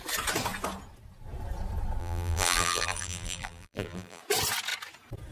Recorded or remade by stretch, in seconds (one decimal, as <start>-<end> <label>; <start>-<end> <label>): 0.0-2.0 recorded; 2.0-4.2 remade; 4.2-5.3 recorded